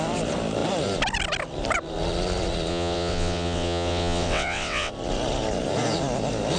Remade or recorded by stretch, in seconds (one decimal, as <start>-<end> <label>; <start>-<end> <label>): 0.0-2.7 recorded; 2.7-4.9 remade; 4.9-6.6 recorded